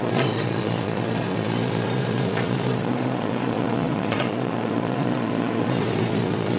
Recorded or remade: remade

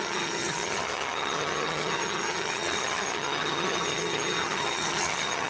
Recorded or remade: remade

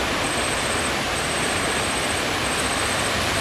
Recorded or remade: recorded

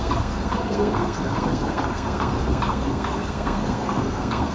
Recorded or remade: remade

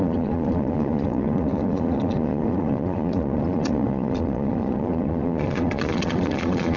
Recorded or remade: remade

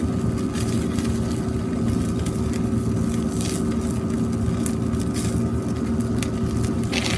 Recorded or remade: recorded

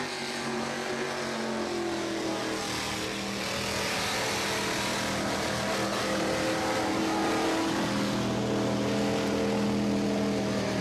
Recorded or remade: recorded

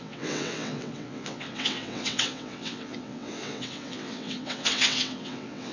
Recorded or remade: remade